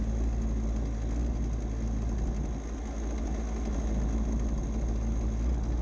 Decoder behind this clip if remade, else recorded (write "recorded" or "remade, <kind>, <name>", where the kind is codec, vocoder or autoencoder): recorded